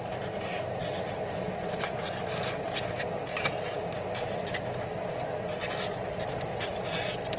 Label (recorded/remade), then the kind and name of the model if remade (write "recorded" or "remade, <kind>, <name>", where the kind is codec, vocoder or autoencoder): recorded